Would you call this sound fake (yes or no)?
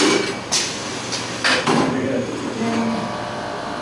no